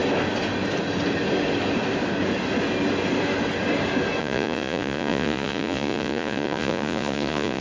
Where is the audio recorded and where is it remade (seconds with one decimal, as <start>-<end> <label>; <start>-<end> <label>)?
0.0-4.2 recorded; 4.2-7.6 remade